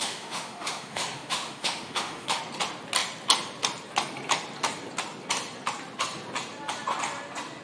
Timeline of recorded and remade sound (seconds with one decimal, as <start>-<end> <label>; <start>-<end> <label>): 0.0-2.4 remade; 2.4-7.6 recorded